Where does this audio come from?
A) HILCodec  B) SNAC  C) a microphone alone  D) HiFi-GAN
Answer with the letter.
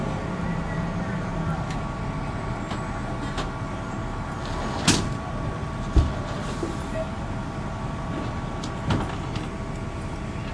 C